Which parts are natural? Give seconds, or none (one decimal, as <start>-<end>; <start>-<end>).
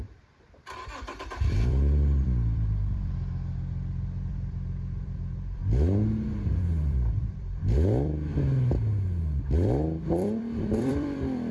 5.6-6.3; 8.3-10.1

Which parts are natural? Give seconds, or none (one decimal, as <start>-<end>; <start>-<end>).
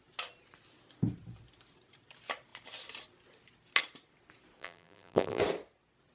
0.0-4.6; 5.4-6.1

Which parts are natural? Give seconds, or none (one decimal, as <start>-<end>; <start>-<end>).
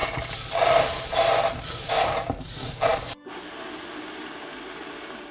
0.0-5.3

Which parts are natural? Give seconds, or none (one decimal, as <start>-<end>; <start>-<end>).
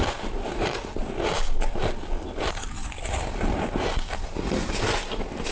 0.0-5.5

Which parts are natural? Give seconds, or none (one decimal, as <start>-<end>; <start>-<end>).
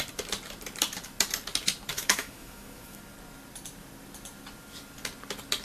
0.0-1.9; 3.0-5.6